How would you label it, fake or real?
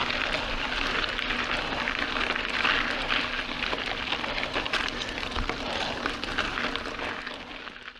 real